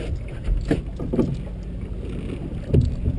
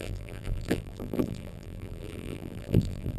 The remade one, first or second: second